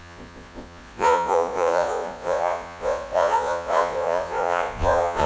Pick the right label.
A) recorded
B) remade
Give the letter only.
B